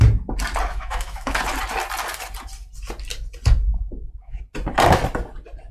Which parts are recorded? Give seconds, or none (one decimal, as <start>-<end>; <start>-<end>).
0.0-0.7; 1.4-3.7; 4.4-5.7